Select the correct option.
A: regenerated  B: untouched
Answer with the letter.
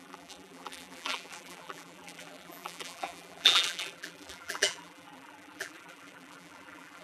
A